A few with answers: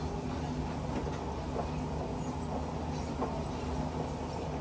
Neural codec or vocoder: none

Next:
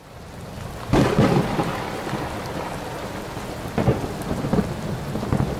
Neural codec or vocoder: none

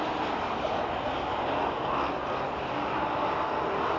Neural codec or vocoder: none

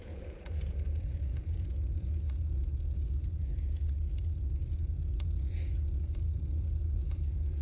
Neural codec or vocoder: vocoder, Vocos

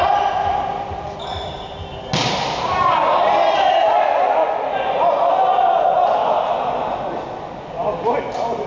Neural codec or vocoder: none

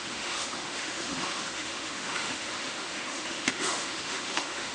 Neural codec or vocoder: autoencoder, DAC-VAE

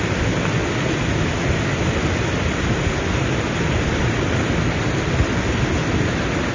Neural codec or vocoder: none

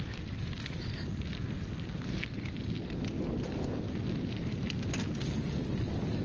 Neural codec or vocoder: none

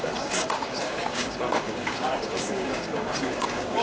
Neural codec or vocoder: codec, DAC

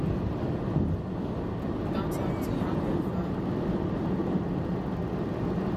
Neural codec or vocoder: none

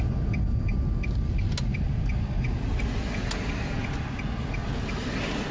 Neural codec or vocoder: none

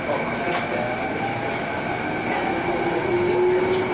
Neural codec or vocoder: none